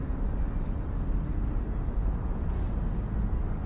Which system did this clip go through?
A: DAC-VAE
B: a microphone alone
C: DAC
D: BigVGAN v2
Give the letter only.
B